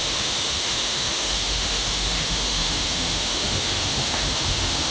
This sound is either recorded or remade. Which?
remade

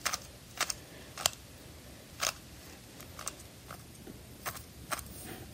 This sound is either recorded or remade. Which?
recorded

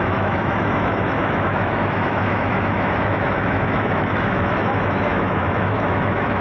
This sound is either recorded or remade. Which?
remade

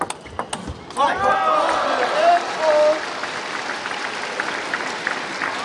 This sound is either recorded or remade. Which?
recorded